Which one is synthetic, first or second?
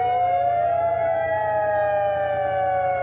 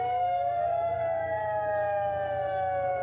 second